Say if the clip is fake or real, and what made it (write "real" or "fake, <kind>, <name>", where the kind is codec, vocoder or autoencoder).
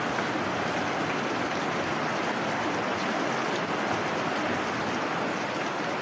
real